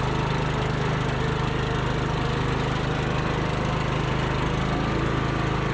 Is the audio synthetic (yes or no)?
no